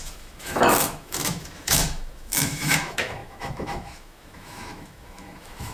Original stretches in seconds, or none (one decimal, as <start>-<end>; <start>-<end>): none